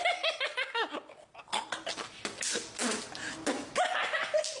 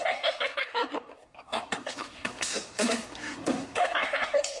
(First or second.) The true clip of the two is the first